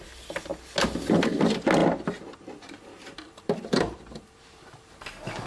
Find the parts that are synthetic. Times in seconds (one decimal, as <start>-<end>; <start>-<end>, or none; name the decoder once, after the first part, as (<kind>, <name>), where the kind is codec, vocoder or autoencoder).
1.8-4.9 (vocoder, BigVGAN v2)